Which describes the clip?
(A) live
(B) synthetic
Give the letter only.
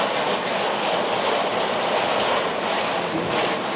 A